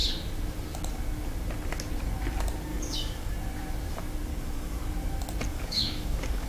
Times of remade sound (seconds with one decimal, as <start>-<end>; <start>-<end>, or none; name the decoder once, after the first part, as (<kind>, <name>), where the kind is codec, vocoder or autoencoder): 2.7-3.3 (codec, DAC); 4.3-4.8; 5.5-6.5